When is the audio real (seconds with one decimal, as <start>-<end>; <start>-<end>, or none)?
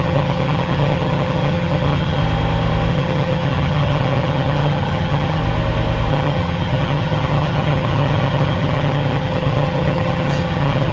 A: 2.2-2.9; 5.4-6.1